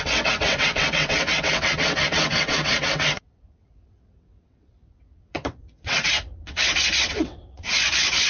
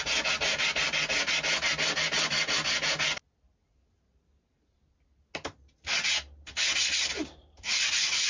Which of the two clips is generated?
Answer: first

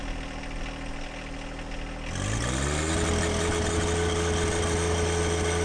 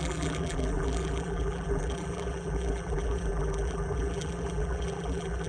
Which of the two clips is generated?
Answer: second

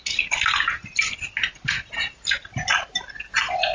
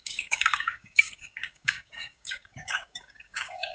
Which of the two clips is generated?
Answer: second